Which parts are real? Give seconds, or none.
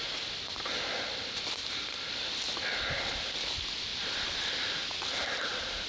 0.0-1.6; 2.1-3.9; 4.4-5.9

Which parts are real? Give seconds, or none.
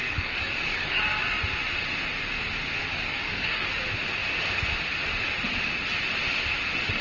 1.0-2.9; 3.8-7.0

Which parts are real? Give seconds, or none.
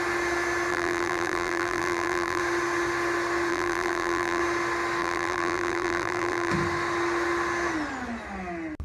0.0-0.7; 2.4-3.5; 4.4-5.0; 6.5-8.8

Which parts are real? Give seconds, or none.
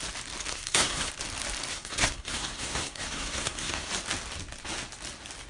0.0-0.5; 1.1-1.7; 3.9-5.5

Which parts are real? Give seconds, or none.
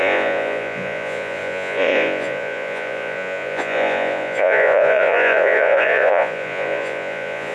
none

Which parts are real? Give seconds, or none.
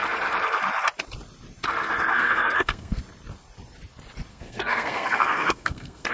0.0-2.1; 3.0-4.3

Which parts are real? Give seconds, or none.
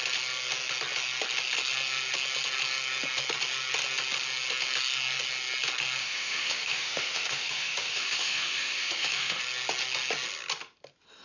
0.0-6.0; 9.4-11.2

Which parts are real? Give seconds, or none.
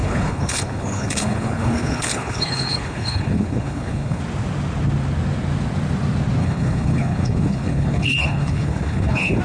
4.2-6.4